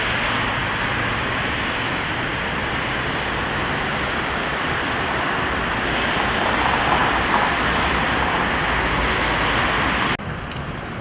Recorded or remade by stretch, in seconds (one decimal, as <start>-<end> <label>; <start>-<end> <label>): 0.0-0.6 recorded; 0.6-1.4 remade; 1.4-2.3 recorded; 2.3-3.1 remade; 3.1-4.5 recorded; 4.5-6.4 remade; 6.4-7.0 recorded; 7.0-8.4 remade; 8.4-11.0 recorded